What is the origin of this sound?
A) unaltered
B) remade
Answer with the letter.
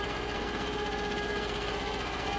B